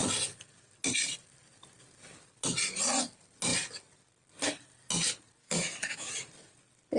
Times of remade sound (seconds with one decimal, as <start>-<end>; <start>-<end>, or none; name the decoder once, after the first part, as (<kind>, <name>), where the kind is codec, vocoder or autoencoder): 5.4-6.1 (autoencoder, DAC-VAE)